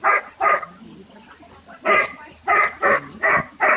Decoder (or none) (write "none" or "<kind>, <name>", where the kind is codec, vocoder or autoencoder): none